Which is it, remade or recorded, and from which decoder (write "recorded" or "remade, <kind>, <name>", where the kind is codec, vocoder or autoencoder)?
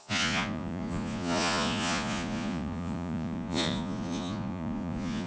remade, vocoder, Vocos